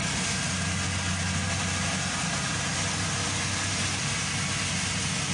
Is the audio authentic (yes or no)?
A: yes